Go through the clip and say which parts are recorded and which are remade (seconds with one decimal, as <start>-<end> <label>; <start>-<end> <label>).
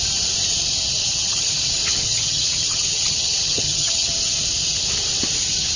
0.0-1.0 recorded; 1.0-1.5 remade; 1.5-1.9 recorded; 1.9-4.1 remade; 4.1-5.8 recorded